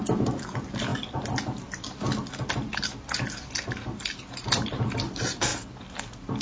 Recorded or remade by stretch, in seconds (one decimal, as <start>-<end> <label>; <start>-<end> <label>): 0.0-6.4 recorded